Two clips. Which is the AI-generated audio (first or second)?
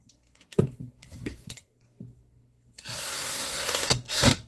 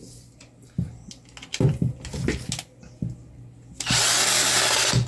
first